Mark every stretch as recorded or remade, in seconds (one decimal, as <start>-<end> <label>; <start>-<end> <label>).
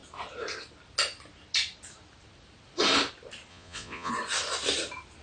0.0-3.5 recorded; 3.5-4.1 remade; 4.1-5.2 recorded